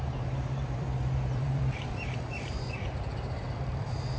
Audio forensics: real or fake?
fake